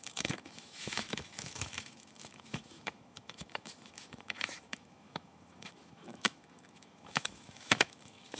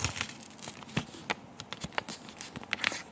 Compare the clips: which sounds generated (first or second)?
first